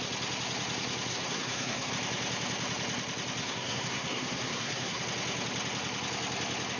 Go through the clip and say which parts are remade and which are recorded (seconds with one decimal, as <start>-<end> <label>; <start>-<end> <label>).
0.0-1.1 recorded; 1.1-1.9 remade; 1.9-3.4 recorded; 3.4-5.0 remade; 5.0-6.8 recorded